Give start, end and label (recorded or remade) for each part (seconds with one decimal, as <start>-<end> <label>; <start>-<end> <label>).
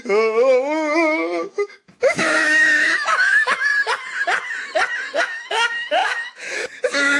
0.0-3.7 remade; 3.7-5.2 recorded; 5.2-7.2 remade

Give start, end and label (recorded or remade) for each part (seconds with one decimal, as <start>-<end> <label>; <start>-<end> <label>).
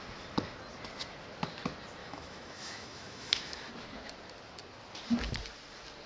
0.0-2.0 recorded; 2.0-3.7 remade; 3.7-6.1 recorded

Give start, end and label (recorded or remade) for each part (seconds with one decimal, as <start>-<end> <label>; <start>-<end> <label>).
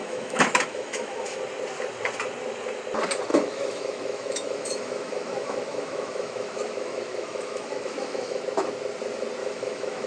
0.0-1.4 remade; 1.4-3.3 recorded; 3.3-8.4 remade; 8.4-9.4 recorded; 9.4-10.1 remade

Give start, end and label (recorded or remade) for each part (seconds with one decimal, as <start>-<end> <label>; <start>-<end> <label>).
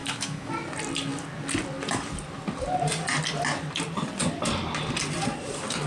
0.0-0.5 remade; 0.5-5.9 recorded